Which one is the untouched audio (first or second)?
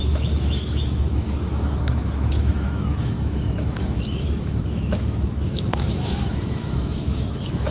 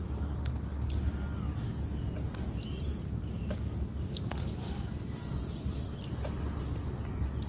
second